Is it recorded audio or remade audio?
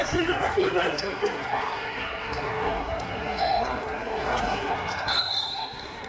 remade